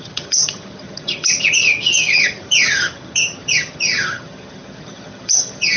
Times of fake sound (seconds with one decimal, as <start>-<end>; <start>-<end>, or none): 0.0-5.8